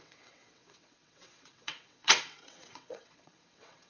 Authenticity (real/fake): fake